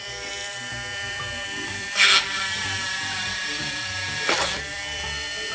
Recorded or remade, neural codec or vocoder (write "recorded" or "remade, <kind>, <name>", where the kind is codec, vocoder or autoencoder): remade, vocoder, BigVGAN v2